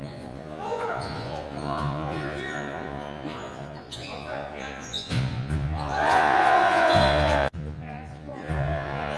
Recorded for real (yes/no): no